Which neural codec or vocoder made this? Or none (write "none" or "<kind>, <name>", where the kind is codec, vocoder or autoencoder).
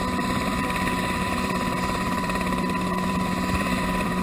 vocoder, BigVGAN v2